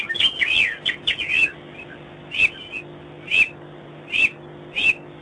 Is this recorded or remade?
recorded